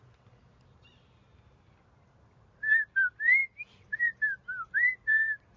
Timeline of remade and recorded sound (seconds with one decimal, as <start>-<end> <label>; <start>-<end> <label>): 0.0-5.6 recorded